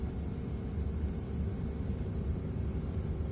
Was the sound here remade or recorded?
recorded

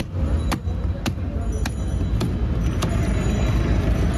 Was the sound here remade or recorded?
recorded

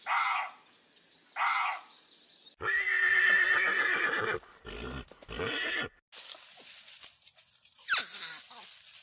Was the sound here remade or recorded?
recorded